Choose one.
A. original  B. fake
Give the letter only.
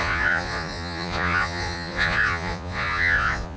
B